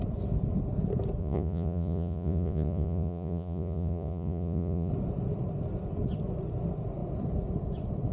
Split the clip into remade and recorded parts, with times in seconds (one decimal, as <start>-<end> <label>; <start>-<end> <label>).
0.0-1.2 recorded; 1.2-4.9 remade; 4.9-8.1 recorded